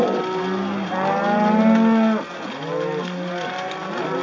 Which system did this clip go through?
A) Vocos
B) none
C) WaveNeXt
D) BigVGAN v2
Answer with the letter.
B